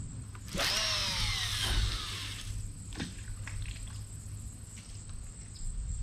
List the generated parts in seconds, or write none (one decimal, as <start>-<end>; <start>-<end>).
none